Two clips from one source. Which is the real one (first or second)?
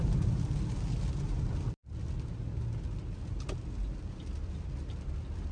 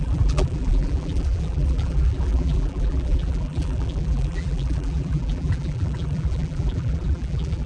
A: first